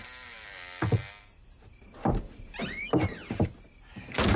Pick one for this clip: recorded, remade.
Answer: recorded